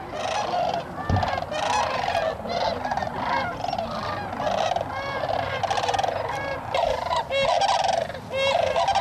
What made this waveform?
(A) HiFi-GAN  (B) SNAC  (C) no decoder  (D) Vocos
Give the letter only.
C